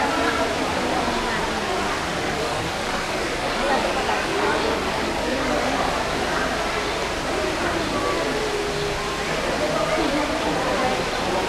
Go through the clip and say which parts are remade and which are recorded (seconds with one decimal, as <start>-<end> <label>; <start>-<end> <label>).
0.0-2.1 recorded; 2.1-5.9 remade; 5.9-11.5 recorded